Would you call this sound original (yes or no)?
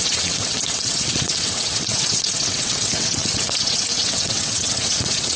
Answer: no